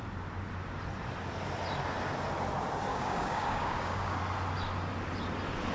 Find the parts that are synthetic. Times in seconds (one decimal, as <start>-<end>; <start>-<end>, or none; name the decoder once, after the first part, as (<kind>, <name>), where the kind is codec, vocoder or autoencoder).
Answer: 2.9-4.2 (codec, DAC)